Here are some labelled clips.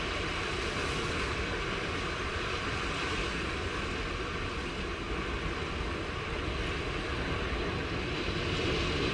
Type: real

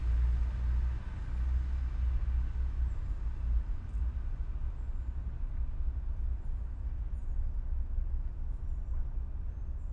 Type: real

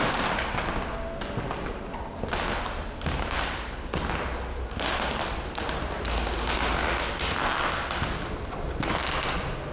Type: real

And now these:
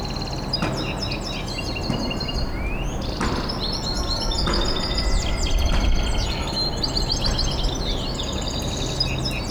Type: real